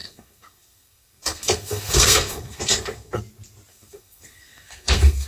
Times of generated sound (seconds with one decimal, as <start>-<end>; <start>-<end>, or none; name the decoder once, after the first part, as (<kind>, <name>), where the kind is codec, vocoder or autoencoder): 0.0-3.2 (codec, SNAC); 3.7-5.3